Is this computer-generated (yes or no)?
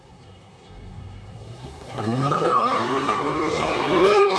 yes